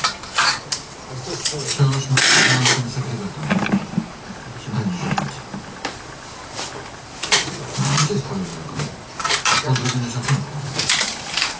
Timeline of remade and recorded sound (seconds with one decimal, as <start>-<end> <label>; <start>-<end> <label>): 0.0-11.6 recorded